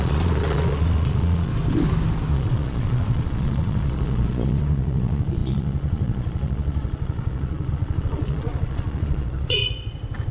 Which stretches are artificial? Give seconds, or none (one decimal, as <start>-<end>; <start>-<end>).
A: 0.0-1.5; 2.3-9.6

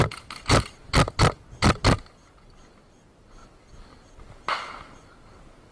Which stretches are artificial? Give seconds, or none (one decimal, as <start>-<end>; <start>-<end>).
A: none

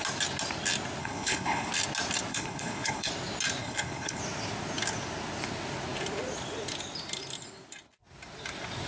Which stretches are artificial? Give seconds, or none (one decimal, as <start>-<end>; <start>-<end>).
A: 1.0-1.7; 2.3-3.1; 3.6-4.2

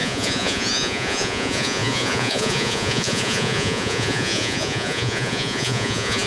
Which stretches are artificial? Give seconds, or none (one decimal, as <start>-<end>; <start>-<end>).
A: 0.0-6.3

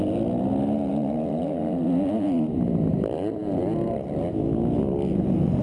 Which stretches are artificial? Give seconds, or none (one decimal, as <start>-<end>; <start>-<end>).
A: none

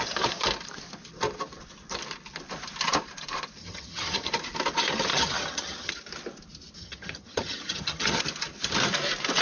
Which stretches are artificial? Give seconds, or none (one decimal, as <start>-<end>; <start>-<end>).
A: 3.6-4.3; 5.1-5.9; 6.8-8.2

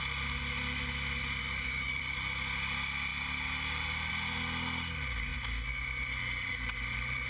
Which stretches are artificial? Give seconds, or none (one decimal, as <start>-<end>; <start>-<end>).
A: 1.4-2.0

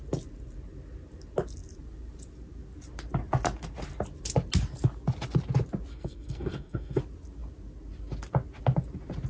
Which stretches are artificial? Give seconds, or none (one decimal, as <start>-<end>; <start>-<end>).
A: 5.9-7.0